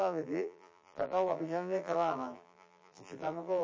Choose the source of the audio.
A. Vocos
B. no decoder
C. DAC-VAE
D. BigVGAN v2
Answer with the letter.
D